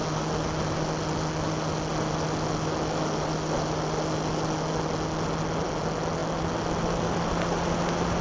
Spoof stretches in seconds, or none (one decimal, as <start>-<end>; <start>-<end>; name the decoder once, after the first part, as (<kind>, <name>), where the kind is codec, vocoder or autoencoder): none

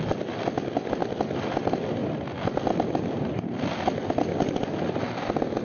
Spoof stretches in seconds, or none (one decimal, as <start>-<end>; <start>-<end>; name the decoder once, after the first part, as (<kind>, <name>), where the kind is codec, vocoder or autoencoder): none